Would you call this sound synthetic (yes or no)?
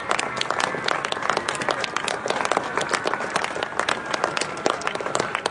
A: yes